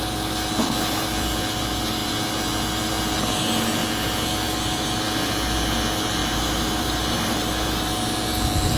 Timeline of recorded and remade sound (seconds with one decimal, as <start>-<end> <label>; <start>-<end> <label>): 0.0-6.2 recorded; 6.2-7.4 remade; 7.4-8.8 recorded